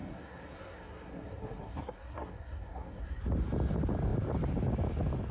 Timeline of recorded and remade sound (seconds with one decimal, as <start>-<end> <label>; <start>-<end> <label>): 0.0-3.2 remade; 3.2-5.3 recorded